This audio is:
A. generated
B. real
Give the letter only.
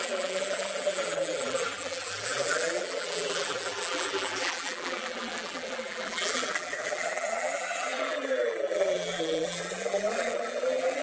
A